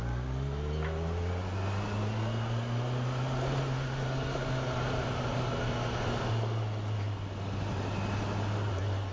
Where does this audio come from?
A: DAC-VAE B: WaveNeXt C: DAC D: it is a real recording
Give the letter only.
D